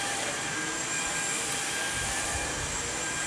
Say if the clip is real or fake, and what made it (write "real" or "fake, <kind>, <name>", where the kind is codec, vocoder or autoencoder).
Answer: fake, vocoder, BigVGAN v2